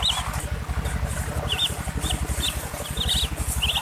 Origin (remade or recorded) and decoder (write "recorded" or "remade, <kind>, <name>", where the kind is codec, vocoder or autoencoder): recorded